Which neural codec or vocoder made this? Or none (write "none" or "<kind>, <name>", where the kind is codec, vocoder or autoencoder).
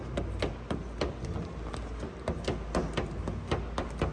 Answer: none